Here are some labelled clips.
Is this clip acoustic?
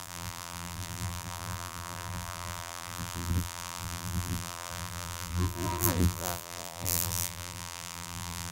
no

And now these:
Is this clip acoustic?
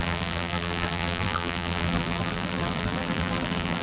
no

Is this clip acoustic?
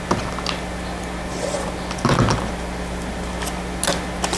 yes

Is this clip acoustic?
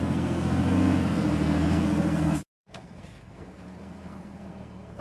no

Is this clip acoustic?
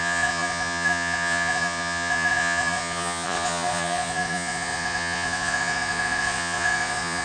no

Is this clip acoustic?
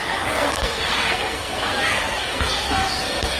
no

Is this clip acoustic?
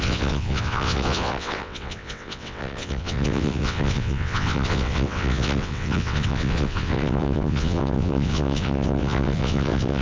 no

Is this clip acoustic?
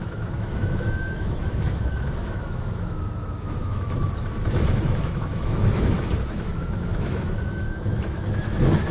no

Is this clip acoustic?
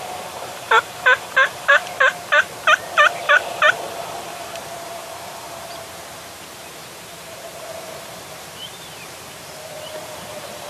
no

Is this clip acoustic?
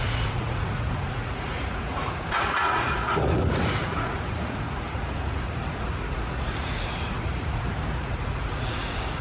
no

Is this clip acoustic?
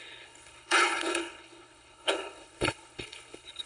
no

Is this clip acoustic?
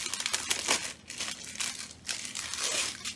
yes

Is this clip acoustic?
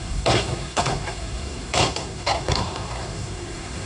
no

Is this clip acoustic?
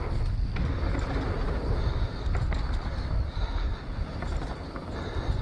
yes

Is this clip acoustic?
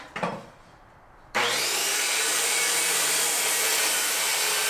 no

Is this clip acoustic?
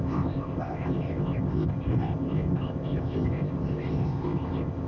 no